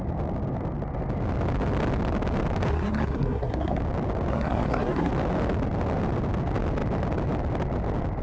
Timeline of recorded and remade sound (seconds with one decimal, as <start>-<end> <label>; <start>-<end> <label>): 0.0-2.7 recorded; 2.7-3.8 remade; 3.8-4.3 recorded; 4.3-5.1 remade; 5.1-8.2 recorded

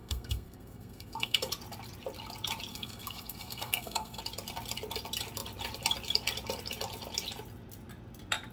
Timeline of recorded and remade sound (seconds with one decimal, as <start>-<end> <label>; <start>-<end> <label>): 0.0-1.5 remade; 1.5-2.7 recorded; 2.7-4.2 remade; 4.2-8.5 recorded

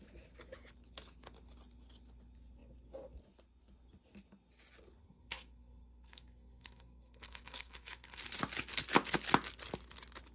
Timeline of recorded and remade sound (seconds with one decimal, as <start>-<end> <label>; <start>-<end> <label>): 0.0-5.0 recorded; 5.0-8.2 remade; 8.2-10.3 recorded